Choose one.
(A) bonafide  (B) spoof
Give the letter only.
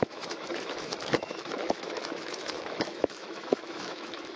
B